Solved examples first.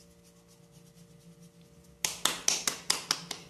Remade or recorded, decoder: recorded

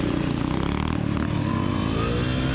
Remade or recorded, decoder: recorded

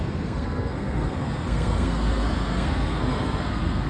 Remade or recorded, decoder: remade, codec, SNAC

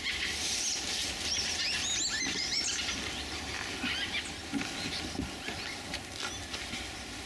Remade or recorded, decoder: recorded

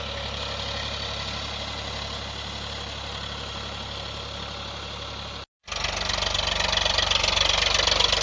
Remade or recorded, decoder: recorded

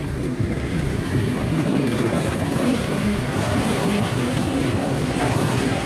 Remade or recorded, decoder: remade, codec, SNAC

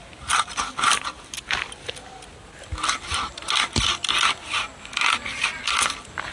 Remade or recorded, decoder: recorded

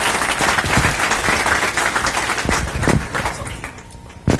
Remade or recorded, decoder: recorded